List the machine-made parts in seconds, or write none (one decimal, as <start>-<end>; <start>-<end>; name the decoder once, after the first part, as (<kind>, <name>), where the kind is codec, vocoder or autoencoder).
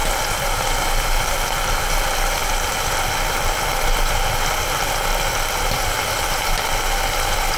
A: none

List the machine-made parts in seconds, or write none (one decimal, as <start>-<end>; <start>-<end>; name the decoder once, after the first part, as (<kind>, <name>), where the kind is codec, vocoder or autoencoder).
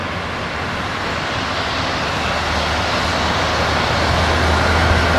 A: none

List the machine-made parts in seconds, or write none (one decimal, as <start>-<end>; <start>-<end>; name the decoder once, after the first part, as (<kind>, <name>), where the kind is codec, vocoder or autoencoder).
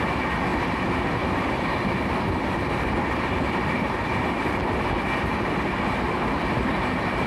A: 0.5-4.9 (vocoder, BigVGAN v2)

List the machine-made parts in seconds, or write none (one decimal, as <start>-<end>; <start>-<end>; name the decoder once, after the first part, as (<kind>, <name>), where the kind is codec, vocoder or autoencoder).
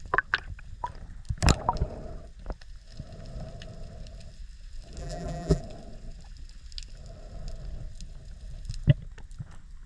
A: 5.0-5.6 (vocoder, BigVGAN v2)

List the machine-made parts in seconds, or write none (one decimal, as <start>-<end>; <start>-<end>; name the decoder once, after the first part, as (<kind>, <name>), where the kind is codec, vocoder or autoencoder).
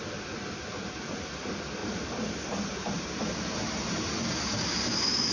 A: 1.8-5.3 (vocoder, BigVGAN v2)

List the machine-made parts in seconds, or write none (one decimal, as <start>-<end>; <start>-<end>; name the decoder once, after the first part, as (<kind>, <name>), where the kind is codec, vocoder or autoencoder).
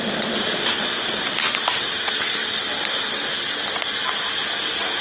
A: none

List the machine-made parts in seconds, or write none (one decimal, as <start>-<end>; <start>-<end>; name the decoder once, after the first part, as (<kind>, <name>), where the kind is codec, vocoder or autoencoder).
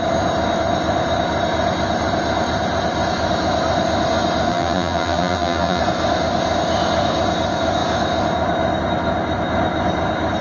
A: 4.5-5.8 (vocoder, BigVGAN v2)